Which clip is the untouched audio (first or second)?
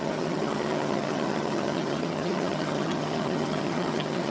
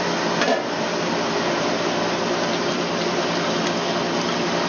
second